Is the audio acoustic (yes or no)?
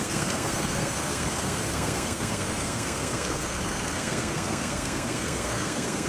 no